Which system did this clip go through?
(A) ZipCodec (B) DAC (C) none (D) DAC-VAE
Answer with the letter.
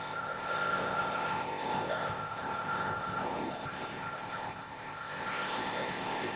A